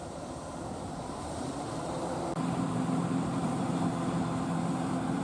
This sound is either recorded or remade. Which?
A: remade